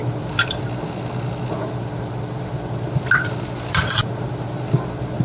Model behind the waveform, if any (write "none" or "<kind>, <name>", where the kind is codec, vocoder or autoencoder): none